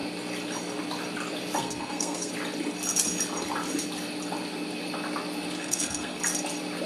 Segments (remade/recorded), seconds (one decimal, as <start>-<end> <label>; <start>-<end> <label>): 0.0-1.6 recorded; 1.6-2.3 remade; 2.3-5.6 recorded; 5.6-6.2 remade; 6.2-6.9 recorded